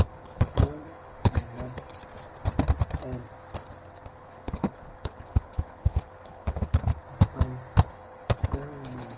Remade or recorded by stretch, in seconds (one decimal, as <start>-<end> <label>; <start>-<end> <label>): 0.0-2.0 remade; 2.0-4.2 recorded; 4.2-6.9 remade; 6.9-7.9 recorded; 7.9-9.2 remade